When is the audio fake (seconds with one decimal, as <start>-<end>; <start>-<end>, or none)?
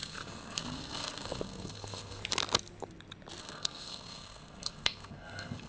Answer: 0.0-2.2; 3.4-5.7